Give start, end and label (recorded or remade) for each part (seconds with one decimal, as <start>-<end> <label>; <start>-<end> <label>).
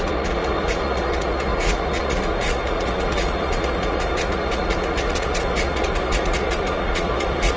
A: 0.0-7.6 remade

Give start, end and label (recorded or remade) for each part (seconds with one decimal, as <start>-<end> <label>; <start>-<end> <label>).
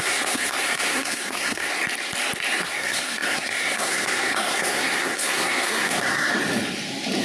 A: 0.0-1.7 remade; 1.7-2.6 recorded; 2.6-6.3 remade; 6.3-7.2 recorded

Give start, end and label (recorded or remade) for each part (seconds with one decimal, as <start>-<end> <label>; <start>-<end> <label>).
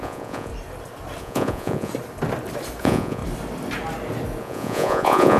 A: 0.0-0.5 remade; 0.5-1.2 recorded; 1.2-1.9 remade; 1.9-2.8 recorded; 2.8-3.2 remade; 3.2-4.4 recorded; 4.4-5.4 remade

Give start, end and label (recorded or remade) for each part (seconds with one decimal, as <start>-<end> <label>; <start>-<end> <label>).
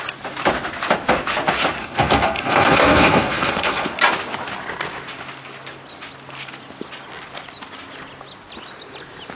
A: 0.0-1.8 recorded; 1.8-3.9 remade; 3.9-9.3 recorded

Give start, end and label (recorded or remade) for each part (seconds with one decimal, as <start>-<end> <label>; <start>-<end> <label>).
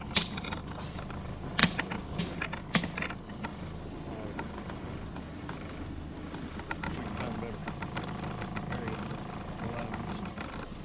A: 0.0-1.6 recorded; 1.6-2.2 remade; 2.2-7.6 recorded; 7.6-8.4 remade; 8.4-9.1 recorded; 9.1-9.6 remade; 9.6-10.8 recorded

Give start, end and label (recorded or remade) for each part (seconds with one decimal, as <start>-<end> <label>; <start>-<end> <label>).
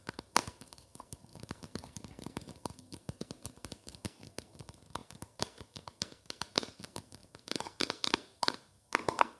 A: 0.0-9.4 remade